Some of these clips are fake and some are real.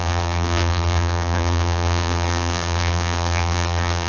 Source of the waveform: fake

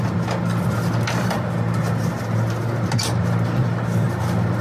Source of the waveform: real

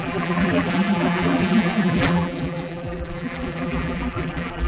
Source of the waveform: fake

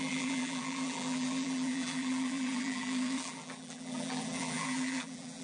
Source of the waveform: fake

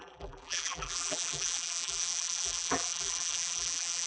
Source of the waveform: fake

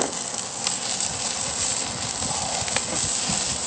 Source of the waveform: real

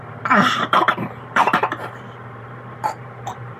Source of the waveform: fake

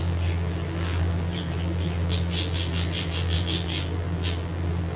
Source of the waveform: fake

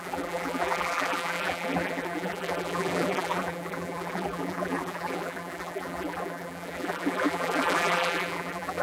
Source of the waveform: fake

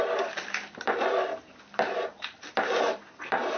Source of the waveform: fake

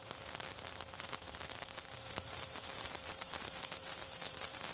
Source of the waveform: fake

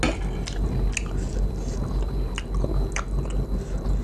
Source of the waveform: real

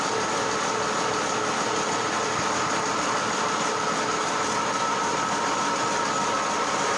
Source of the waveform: real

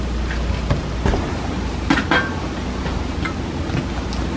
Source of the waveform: real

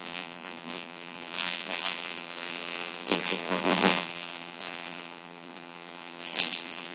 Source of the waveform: fake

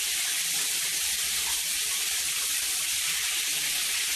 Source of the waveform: fake